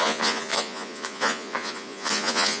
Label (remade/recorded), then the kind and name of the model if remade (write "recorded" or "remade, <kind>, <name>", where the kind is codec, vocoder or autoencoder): remade, vocoder, Vocos